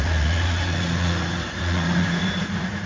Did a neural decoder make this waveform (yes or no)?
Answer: yes